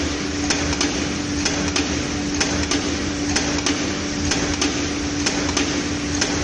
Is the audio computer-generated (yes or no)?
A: no